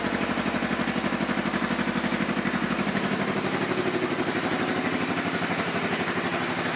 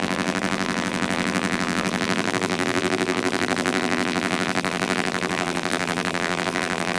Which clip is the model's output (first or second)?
second